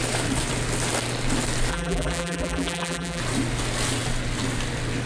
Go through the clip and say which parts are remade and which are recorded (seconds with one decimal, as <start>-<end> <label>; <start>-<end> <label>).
0.0-1.7 recorded; 1.7-3.2 remade; 3.2-5.1 recorded